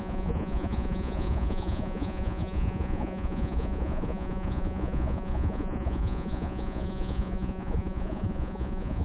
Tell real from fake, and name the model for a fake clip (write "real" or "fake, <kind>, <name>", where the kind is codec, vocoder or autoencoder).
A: fake, vocoder, Vocos